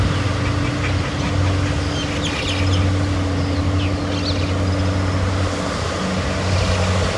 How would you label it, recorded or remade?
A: recorded